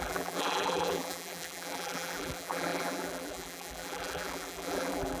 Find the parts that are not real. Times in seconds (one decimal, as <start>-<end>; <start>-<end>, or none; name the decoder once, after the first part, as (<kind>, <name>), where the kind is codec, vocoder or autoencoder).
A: 0.0-5.2 (vocoder, BigVGAN v2)